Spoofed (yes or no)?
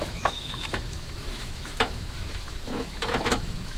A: yes